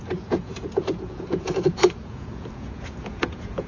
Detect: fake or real fake